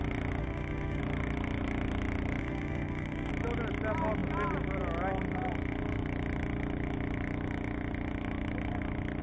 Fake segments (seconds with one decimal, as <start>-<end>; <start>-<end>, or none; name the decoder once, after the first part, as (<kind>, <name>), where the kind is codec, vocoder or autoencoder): 0.4-1.0 (autoencoder, DAC-VAE); 2.4-3.3